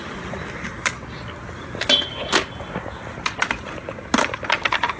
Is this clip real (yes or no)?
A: yes